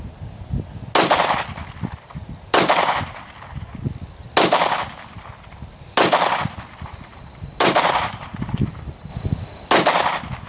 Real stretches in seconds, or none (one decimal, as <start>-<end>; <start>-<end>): 0.0-7.1; 8.5-10.5

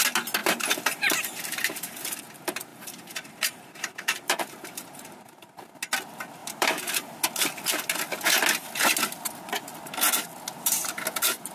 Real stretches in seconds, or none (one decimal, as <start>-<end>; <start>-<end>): 0.0-0.4; 2.2-2.7; 5.6-6.4; 7.2-11.5

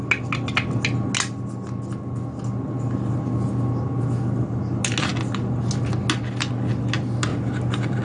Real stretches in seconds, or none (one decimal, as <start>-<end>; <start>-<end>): 0.0-7.3